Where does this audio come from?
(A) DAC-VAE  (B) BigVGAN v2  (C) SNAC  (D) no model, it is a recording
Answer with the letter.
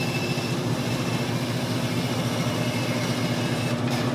D